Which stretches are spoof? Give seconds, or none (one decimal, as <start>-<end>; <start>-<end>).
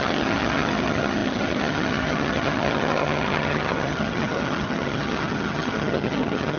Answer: 0.0-6.6